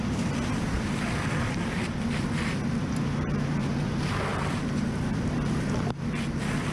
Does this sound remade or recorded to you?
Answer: remade